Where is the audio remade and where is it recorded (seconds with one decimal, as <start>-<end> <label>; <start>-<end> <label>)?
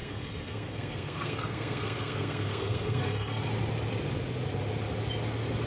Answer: 0.0-3.4 remade; 3.4-5.7 recorded